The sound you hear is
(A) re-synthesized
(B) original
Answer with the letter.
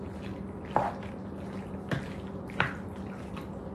B